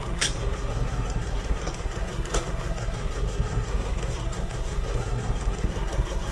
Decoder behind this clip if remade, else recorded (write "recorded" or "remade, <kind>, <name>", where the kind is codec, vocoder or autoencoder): remade, codec, SNAC